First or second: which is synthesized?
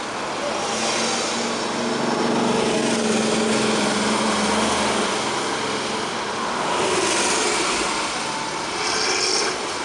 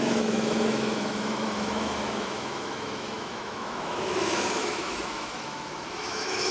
second